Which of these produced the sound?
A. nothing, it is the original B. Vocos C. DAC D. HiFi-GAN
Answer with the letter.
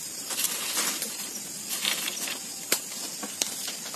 A